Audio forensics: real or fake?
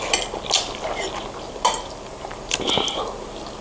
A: real